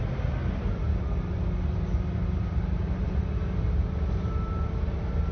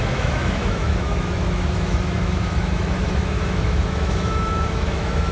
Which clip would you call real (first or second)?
first